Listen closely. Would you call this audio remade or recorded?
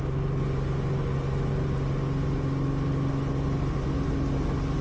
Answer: recorded